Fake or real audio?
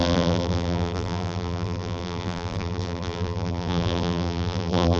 fake